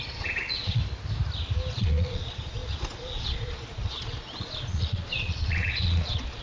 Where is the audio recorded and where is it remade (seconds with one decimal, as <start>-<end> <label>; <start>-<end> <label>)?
0.0-0.8 remade; 0.8-1.7 recorded; 1.7-6.4 remade

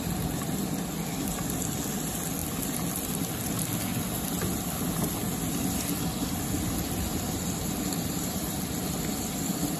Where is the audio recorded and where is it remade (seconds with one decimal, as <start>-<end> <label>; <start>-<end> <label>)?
0.0-9.8 recorded

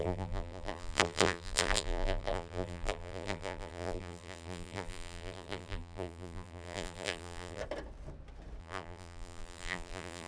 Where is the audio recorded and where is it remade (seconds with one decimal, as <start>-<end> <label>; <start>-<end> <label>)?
0.0-7.6 remade; 7.6-8.6 recorded; 8.6-10.3 remade

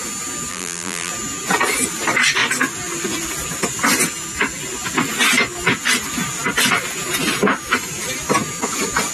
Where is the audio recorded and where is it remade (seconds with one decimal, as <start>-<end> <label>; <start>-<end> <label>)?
0.0-0.5 recorded; 0.5-1.1 remade; 1.1-9.1 recorded

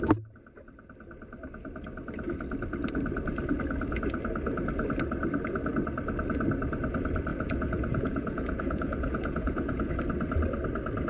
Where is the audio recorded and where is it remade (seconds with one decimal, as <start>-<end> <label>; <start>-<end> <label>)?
0.0-7.3 recorded; 7.3-9.9 remade; 9.9-11.1 recorded

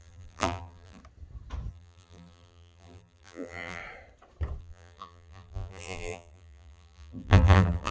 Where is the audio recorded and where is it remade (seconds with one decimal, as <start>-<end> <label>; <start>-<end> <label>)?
0.0-1.0 remade; 1.0-1.7 recorded; 1.7-3.8 remade; 3.8-4.6 recorded; 4.6-7.9 remade

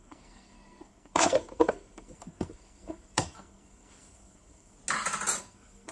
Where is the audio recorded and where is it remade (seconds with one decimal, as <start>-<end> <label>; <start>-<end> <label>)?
0.0-4.8 remade; 4.8-5.4 recorded; 5.4-5.9 remade